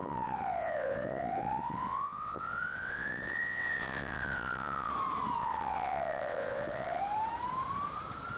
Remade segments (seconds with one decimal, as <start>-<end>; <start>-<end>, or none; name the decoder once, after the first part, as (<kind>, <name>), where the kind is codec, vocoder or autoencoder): 0.0-4.9 (vocoder, WaveNeXt); 5.4-7.0